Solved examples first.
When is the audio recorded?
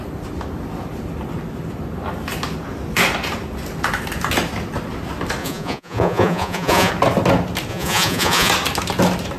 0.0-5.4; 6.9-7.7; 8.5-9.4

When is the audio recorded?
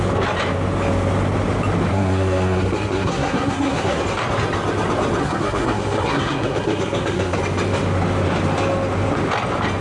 0.0-1.9; 4.0-5.2; 7.4-9.8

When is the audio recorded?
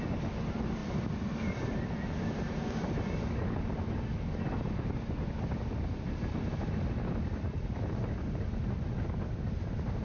0.0-10.0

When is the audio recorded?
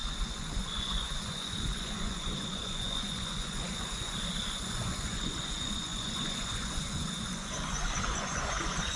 none